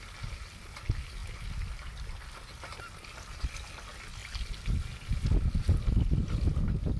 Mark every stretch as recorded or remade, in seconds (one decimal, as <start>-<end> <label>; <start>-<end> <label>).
0.0-7.0 recorded